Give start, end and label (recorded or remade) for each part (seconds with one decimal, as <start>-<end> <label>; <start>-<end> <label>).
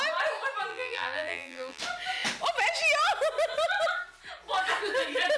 0.0-0.7 recorded; 0.7-1.8 remade; 1.8-5.4 recorded